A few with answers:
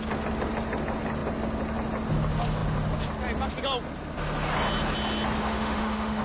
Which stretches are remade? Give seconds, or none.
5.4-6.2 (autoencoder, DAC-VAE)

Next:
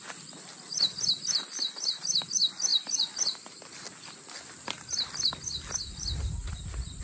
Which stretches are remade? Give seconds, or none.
none

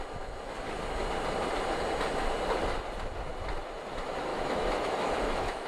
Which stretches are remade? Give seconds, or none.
4.3-5.7 (autoencoder, DAC-VAE)